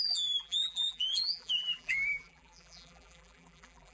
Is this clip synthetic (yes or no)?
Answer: yes